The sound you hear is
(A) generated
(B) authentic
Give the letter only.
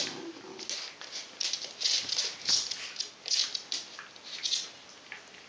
B